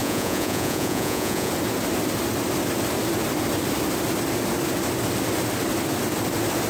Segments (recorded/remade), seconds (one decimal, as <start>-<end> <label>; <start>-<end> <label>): 0.0-1.5 remade; 1.5-6.7 recorded